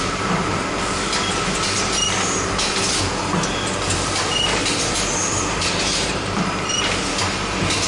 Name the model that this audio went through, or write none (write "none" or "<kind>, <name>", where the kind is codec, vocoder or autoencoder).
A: vocoder, BigVGAN v2